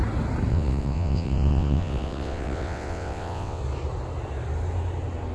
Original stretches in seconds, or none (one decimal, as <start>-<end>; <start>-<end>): 0.0-0.5; 3.6-5.3

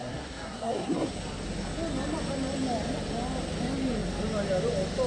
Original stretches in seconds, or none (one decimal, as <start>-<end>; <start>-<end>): 1.1-5.1

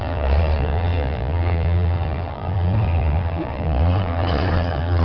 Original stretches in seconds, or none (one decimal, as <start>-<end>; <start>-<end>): none

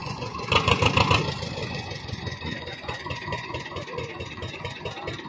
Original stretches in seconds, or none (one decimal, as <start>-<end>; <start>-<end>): 0.8-1.6; 4.8-5.3

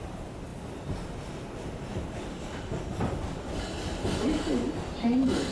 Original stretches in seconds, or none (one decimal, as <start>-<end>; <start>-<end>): 0.0-5.5

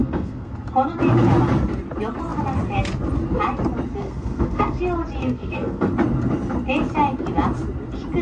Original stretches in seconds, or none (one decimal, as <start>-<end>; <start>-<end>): 0.5-4.0; 4.8-5.2; 5.9-8.2

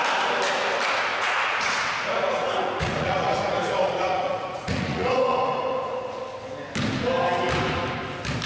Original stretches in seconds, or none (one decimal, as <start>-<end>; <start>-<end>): 0.0-1.1; 6.2-8.5